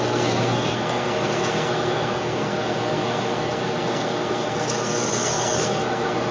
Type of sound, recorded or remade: remade